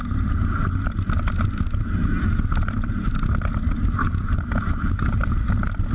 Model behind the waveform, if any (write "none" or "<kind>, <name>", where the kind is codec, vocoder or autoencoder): none